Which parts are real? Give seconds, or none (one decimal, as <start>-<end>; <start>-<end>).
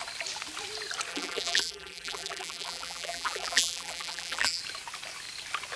0.0-1.1; 4.6-5.8